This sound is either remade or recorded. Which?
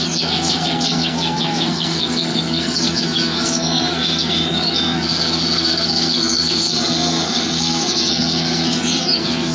remade